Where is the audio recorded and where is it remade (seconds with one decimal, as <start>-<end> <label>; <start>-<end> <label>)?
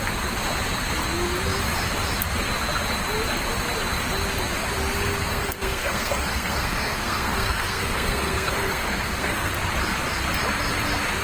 0.0-5.3 recorded; 5.3-9.5 remade; 9.5-11.2 recorded